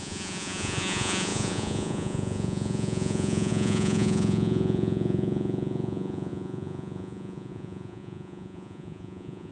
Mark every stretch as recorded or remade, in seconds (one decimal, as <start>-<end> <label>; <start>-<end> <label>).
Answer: 0.0-9.5 remade